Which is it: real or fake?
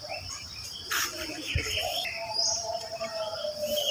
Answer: fake